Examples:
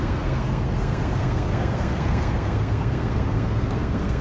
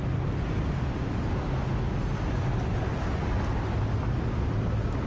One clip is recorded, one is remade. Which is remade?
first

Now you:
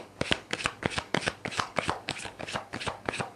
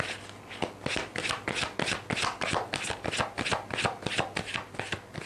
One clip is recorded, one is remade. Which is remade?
first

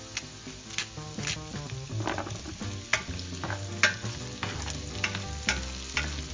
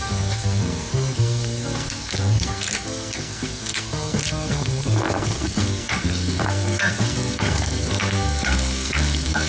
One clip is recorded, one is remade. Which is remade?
second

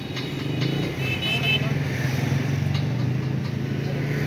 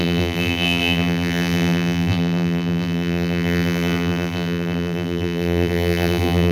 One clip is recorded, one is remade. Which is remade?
second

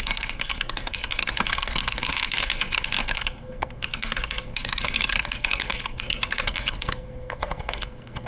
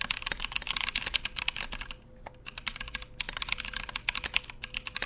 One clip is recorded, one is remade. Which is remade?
first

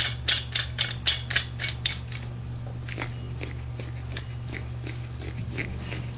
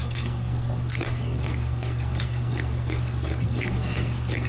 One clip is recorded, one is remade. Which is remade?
second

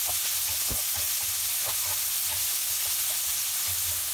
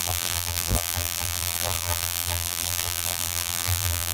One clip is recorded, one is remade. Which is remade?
second